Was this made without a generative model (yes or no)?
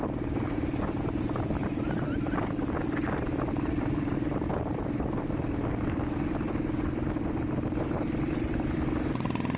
no